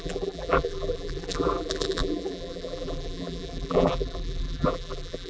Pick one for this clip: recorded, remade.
remade